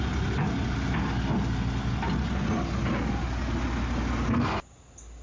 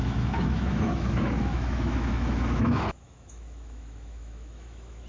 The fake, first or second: second